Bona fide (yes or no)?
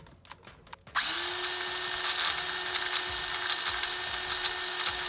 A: yes